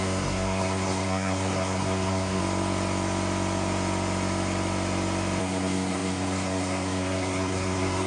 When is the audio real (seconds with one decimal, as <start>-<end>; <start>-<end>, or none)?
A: 2.4-5.4